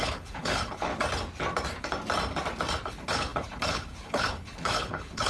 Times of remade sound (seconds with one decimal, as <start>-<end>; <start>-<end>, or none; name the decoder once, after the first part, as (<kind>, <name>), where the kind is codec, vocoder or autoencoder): 0.0-0.9 (codec, HILCodec); 2.9-5.3